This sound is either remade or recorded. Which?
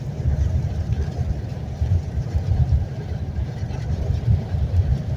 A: remade